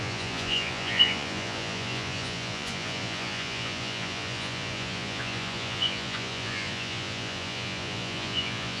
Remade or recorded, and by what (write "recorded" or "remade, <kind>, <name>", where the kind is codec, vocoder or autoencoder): remade, vocoder, Vocos